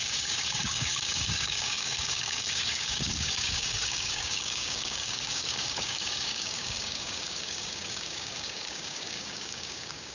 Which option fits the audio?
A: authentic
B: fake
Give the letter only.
B